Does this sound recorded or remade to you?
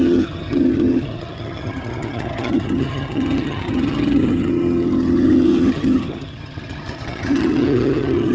remade